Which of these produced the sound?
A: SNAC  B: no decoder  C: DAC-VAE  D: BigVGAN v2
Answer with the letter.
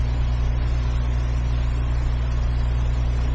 B